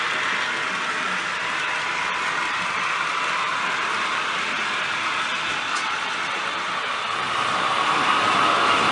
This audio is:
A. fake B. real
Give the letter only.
B